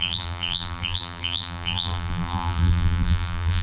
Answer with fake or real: fake